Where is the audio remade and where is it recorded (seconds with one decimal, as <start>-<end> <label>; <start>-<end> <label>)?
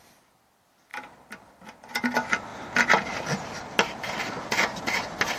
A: 0.0-5.4 recorded